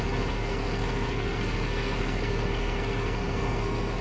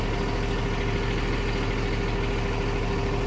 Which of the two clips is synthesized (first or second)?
first